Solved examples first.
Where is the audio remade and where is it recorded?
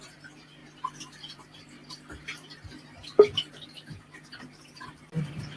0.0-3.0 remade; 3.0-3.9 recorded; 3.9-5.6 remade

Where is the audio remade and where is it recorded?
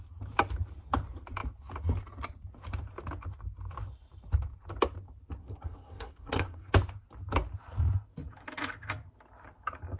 0.0-5.4 recorded; 5.4-6.7 remade; 6.7-10.0 recorded